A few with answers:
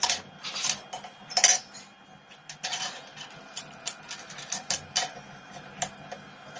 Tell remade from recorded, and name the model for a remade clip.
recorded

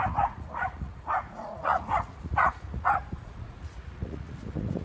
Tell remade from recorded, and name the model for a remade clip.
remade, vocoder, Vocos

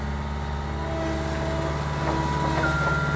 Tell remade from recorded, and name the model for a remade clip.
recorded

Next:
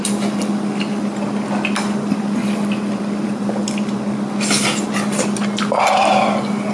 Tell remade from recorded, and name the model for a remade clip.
recorded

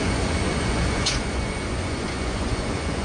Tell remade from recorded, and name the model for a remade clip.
remade, vocoder, Vocos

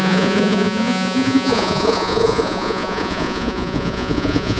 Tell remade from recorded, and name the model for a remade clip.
remade, vocoder, Vocos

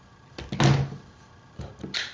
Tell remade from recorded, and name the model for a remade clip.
recorded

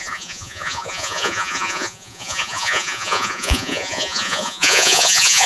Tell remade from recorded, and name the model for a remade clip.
remade, vocoder, Vocos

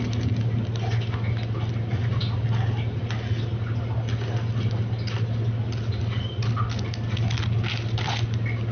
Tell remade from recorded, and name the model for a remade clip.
recorded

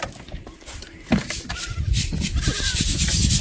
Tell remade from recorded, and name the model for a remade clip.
recorded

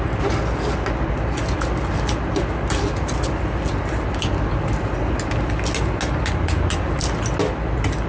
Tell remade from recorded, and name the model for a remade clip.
recorded